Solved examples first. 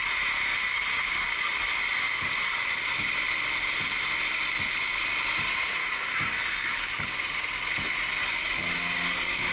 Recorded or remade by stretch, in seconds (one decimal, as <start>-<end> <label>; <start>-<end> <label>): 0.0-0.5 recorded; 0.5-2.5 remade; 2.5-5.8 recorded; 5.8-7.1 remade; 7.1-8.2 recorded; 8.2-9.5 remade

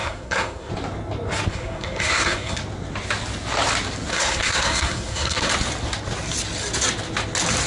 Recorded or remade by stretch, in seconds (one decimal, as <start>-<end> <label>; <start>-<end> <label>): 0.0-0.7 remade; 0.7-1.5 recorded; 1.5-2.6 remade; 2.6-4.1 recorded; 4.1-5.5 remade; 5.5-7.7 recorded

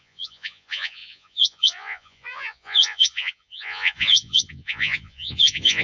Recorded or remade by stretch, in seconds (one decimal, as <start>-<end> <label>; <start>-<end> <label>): 0.0-5.8 remade

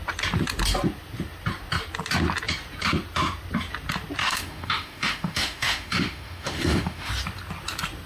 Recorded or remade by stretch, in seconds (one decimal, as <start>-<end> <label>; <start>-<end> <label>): 0.0-4.2 recorded; 4.2-7.1 remade; 7.1-8.1 recorded

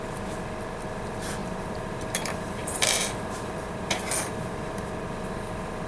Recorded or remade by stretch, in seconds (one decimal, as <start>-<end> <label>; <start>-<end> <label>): 0.0-1.4 recorded; 1.4-4.9 remade; 4.9-5.9 recorded